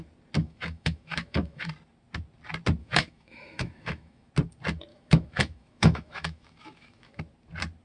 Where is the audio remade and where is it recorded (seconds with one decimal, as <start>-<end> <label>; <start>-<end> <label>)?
0.0-0.4 recorded; 0.4-1.7 remade; 1.7-2.8 recorded; 2.8-4.3 remade; 4.3-4.9 recorded; 4.9-7.2 remade; 7.2-7.8 recorded